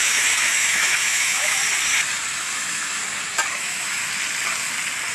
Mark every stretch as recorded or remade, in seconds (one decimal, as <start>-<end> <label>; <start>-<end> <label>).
0.0-1.6 remade; 1.6-2.3 recorded; 2.3-3.0 remade; 3.0-3.5 recorded; 3.5-4.0 remade; 4.0-5.1 recorded